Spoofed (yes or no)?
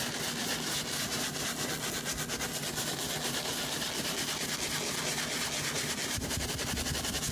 no